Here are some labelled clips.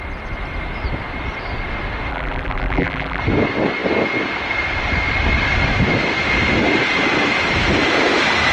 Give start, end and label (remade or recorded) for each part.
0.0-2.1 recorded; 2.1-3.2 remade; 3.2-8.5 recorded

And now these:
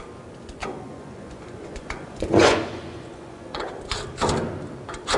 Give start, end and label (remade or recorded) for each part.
0.0-0.6 recorded; 0.6-3.7 remade; 3.7-5.2 recorded